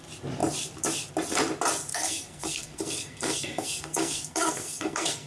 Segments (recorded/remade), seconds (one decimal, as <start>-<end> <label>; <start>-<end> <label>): 0.0-1.9 recorded; 1.9-5.3 remade